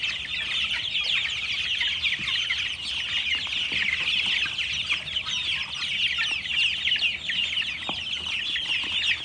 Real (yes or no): yes